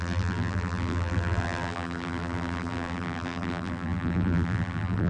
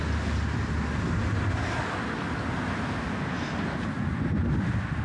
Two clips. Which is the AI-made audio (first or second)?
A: first